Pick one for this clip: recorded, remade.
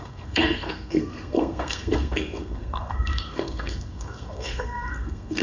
remade